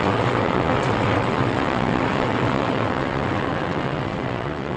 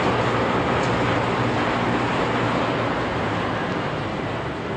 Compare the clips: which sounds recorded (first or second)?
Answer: second